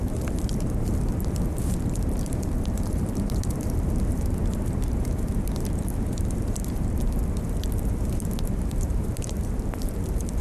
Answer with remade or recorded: remade